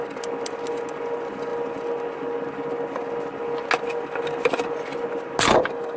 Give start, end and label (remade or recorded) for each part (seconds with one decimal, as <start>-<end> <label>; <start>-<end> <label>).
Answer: 0.0-6.0 recorded

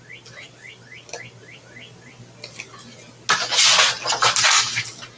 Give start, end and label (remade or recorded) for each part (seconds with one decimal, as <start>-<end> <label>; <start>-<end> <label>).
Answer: 0.0-5.2 recorded

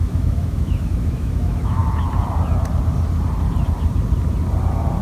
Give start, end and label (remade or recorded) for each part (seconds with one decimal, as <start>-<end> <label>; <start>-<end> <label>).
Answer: 0.0-1.8 remade; 1.8-5.0 recorded

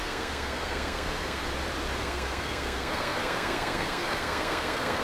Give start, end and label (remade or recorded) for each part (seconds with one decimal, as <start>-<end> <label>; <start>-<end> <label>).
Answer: 0.0-1.4 remade; 1.4-2.0 recorded; 2.0-5.0 remade

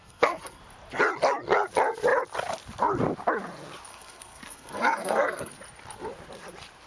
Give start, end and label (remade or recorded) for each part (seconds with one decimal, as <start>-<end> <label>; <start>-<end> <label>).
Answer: 0.0-0.6 remade; 0.6-3.9 recorded; 3.9-5.5 remade; 5.5-6.9 recorded